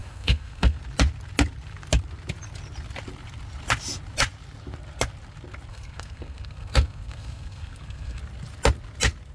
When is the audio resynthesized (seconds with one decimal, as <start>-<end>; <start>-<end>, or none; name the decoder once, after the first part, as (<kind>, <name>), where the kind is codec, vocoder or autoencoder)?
0.0-0.8 (codec, SNAC); 5.7-8.2